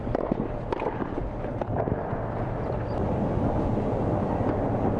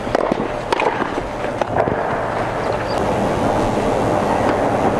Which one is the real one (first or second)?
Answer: second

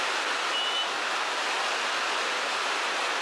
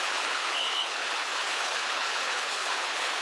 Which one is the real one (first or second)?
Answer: first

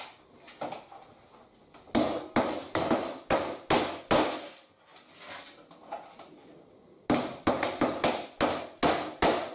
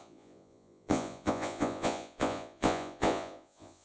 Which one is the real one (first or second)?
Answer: first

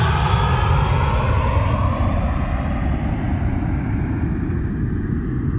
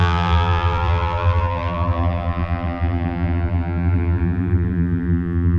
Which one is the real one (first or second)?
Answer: first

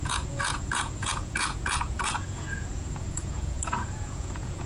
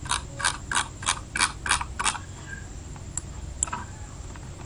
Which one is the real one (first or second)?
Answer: second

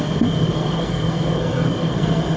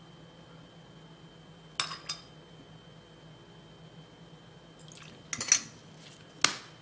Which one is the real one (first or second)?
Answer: second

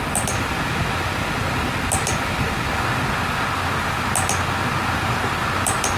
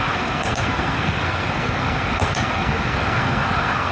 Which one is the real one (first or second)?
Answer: first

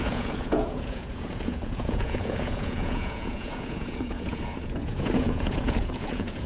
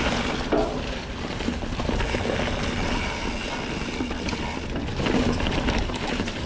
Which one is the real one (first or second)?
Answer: second